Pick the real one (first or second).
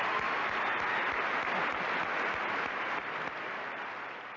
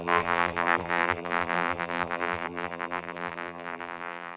first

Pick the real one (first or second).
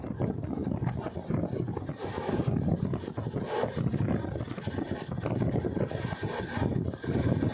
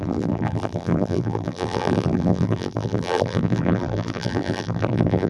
first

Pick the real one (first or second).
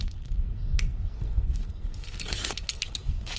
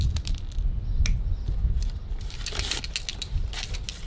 second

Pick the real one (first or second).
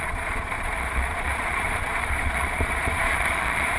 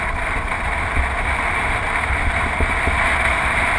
second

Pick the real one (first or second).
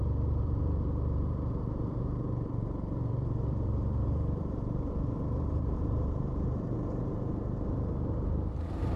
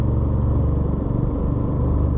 second